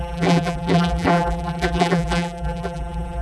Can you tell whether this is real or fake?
fake